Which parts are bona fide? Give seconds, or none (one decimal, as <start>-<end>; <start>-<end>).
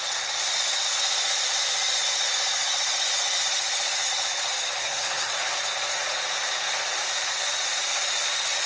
0.0-4.8; 5.3-8.7